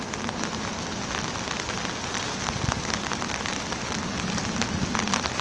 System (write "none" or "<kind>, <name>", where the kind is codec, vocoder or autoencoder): none